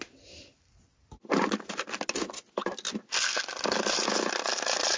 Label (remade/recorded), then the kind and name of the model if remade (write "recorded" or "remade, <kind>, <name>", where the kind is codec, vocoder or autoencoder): recorded